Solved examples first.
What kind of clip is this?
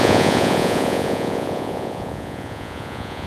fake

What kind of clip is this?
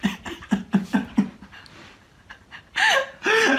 real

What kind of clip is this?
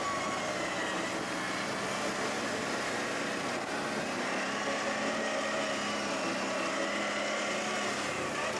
real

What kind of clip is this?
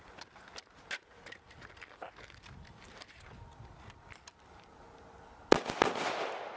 real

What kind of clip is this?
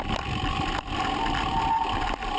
real